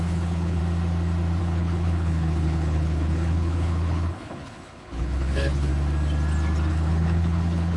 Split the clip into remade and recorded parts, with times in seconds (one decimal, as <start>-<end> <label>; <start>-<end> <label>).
0.0-0.6 remade; 0.6-1.4 recorded; 1.4-5.7 remade; 5.7-6.7 recorded; 6.7-7.8 remade